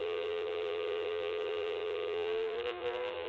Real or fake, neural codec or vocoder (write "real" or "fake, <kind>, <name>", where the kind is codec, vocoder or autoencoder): fake, vocoder, BigVGAN v2